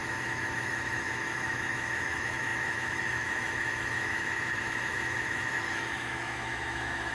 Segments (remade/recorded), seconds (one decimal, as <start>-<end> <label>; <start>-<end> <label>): 0.0-7.1 remade